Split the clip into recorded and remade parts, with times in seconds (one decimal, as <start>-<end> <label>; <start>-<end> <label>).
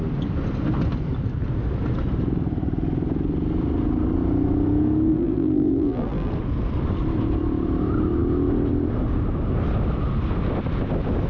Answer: 0.0-5.1 recorded; 5.1-6.3 remade; 6.3-11.3 recorded